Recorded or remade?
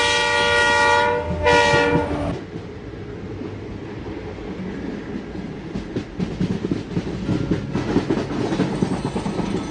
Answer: recorded